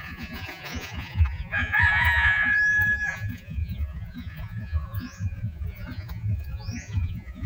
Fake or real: fake